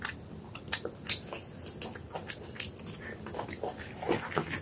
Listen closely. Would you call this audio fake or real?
real